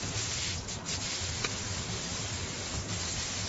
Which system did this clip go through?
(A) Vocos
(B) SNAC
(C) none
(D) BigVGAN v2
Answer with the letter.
C